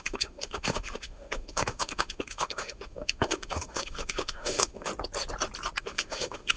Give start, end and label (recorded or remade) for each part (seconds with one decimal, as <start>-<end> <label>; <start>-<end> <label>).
0.0-4.9 remade; 4.9-5.8 recorded; 5.8-6.6 remade